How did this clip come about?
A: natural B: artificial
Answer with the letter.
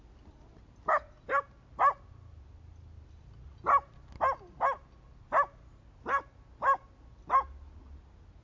A